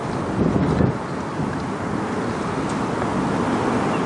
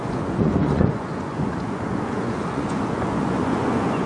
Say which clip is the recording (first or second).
first